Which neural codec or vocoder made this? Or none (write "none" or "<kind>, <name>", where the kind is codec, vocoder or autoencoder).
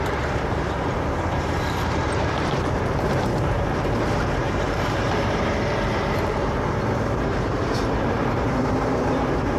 vocoder, BigVGAN v2